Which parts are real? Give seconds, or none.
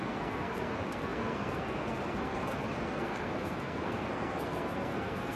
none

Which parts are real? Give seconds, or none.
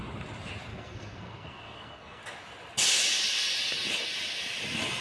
0.0-0.7; 2.2-5.0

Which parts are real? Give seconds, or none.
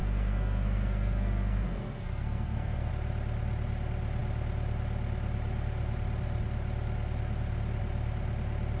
2.9-8.8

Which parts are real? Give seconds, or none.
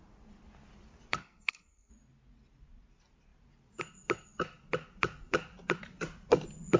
0.0-1.2; 1.9-6.8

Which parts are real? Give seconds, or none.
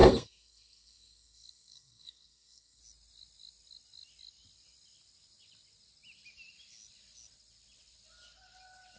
2.8-9.0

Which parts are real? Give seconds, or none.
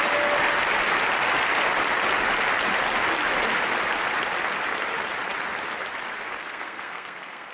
0.0-6.4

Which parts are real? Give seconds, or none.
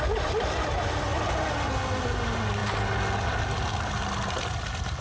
0.0-5.0